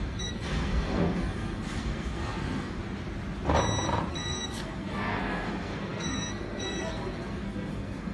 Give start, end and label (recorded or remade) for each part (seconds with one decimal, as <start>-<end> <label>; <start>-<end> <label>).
0.0-2.8 remade; 2.8-4.1 recorded; 4.1-8.1 remade